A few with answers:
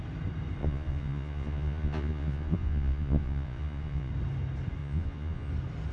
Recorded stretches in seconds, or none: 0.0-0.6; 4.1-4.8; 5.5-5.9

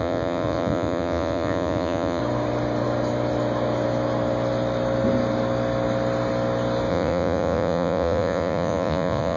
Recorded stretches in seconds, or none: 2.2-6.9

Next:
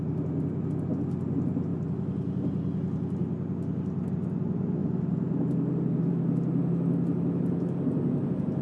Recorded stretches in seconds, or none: 0.0-8.6

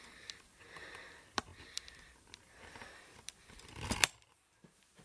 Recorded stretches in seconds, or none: none